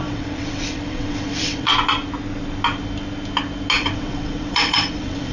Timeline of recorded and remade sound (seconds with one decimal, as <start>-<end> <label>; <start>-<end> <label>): 0.0-1.7 remade; 1.7-3.8 recorded; 3.8-5.3 remade